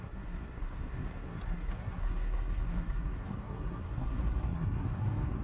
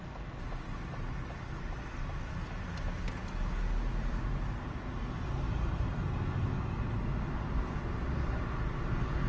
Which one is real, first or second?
second